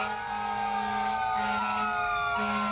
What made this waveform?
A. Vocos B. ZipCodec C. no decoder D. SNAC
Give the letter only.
C